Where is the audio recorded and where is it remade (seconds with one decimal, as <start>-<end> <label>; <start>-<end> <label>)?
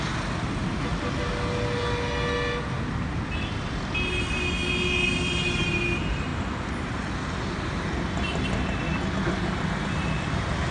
0.0-10.7 recorded